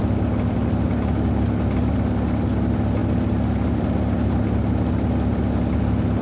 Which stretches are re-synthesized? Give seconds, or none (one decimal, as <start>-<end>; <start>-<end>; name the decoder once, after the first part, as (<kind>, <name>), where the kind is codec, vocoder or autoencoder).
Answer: none